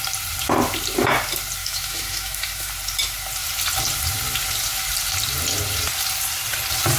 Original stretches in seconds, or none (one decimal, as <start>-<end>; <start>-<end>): 0.0-1.6; 2.7-7.0